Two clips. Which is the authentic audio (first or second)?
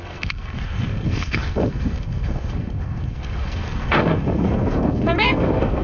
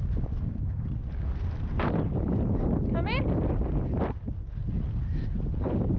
second